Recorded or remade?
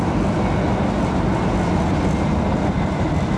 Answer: recorded